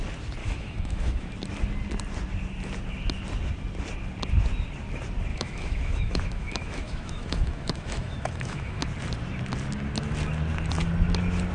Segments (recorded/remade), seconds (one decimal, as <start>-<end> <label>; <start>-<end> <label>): 0.0-0.4 recorded; 0.4-1.3 remade; 1.3-5.3 recorded; 5.3-8.8 remade; 8.8-11.5 recorded